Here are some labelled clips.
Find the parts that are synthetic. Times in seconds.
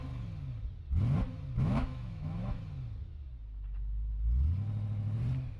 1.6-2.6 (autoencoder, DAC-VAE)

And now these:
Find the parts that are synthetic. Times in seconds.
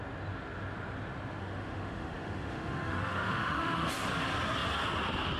1.4-3.9 (autoencoder, DAC-VAE)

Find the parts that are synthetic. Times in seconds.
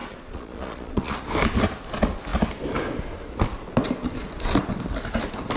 0.0-1.2 (vocoder, Vocos)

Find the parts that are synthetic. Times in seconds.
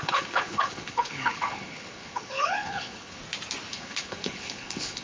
0.0-3.2 (codec, HILCodec); 3.7-5.0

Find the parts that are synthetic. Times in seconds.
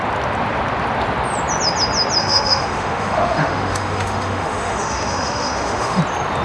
2.2-6.0 (autoencoder, DAC-VAE)